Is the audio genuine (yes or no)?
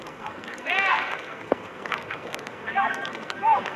no